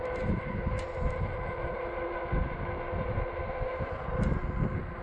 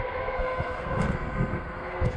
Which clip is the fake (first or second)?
second